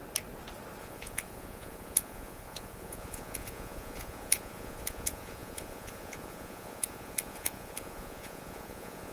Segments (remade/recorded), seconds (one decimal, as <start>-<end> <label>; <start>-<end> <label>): 0.0-0.8 recorded; 0.8-9.1 remade